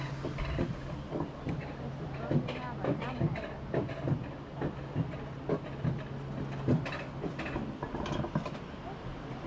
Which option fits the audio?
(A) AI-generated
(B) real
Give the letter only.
B